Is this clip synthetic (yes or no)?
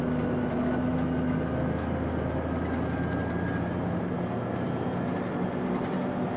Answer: no